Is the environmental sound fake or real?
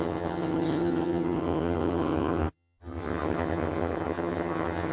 fake